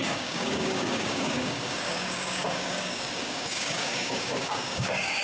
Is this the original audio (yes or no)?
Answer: no